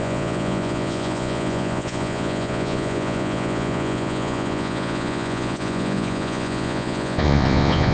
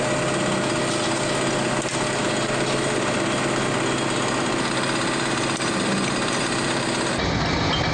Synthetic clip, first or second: first